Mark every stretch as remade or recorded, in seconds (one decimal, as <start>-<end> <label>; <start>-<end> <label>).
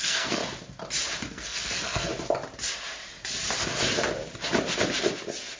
0.0-0.4 remade; 0.4-1.3 recorded; 1.3-2.1 remade; 2.1-5.6 recorded